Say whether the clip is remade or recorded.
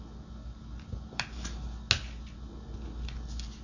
recorded